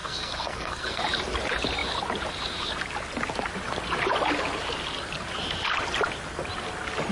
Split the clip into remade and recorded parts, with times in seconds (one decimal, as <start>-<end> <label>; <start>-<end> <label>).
0.0-1.0 remade; 1.0-7.1 recorded